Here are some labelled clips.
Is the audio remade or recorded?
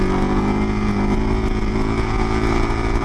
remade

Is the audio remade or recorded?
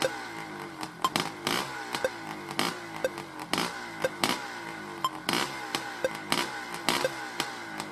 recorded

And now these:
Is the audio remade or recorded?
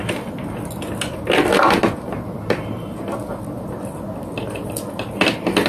recorded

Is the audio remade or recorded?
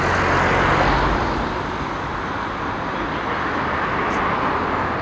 recorded